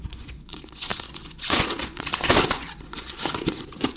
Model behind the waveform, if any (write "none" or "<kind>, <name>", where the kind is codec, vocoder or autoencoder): vocoder, Vocos